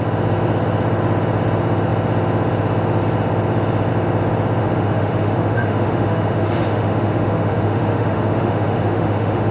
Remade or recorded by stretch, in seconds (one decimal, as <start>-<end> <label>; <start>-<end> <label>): 0.0-4.6 recorded; 4.6-9.5 remade